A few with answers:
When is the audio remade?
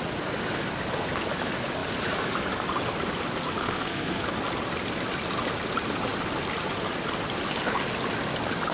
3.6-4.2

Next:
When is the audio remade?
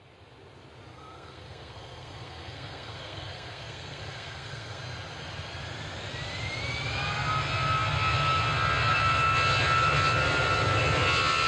0.9-4.8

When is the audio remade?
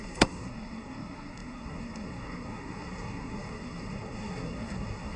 0.0-5.2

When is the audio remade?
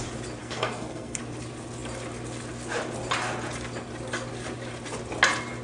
0.4-1.2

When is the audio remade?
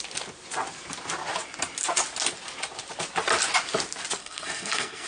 4.2-5.1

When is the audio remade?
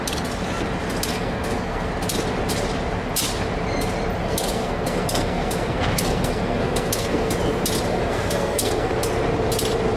1.1-1.9; 4.2-7.3; 7.9-8.9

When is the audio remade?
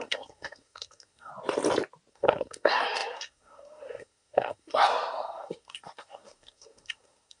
0.0-1.3; 2.1-7.4